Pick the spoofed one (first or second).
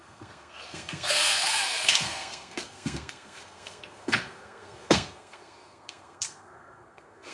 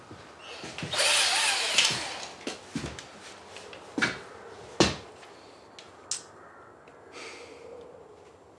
first